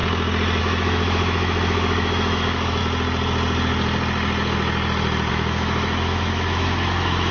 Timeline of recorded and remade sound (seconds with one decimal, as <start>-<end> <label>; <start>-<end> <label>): 0.0-0.6 recorded; 0.6-2.8 remade; 2.8-5.3 recorded; 5.3-7.3 remade